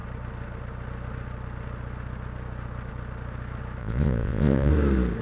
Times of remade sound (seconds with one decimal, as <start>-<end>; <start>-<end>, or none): 3.8-4.7